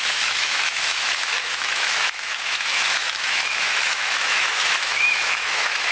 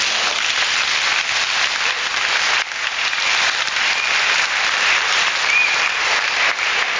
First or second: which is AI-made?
first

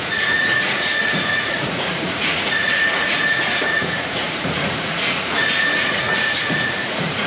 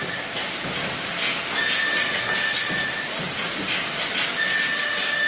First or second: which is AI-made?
first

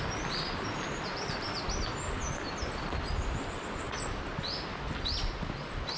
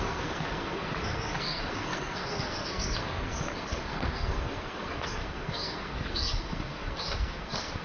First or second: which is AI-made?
second